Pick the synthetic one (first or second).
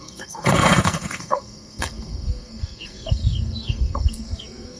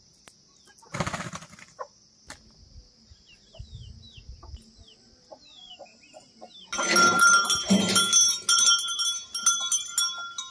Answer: first